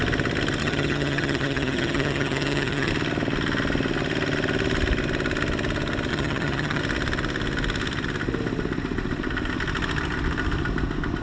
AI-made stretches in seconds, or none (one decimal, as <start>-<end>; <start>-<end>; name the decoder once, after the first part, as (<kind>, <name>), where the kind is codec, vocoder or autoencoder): 0.6-2.9 (vocoder, HiFi-GAN); 6.1-6.8